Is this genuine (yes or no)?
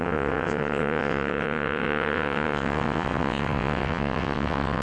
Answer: no